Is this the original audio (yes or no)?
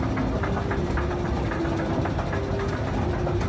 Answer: yes